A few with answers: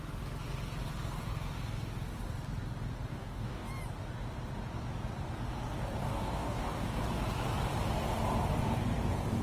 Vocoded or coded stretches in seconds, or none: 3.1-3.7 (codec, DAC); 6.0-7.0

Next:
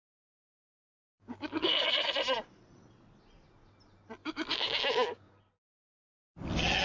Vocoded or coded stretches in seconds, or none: 1.0-2.1 (codec, DAC); 4.2-5.4

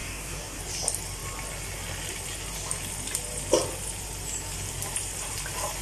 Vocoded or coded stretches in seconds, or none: 0.0-0.6 (codec, DAC)

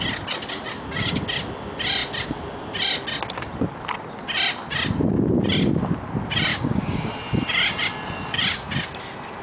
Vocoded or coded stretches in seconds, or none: 6.5-7.1 (codec, DAC)

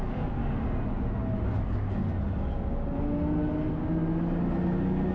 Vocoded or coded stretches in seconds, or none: 0.0-0.4 (codec, DAC); 1.6-2.0

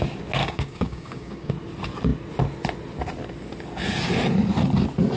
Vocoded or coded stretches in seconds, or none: 0.4-1.5 (codec, DAC)

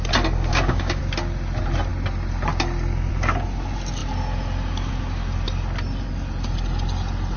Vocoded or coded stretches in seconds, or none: 0.5-1.0 (codec, DAC)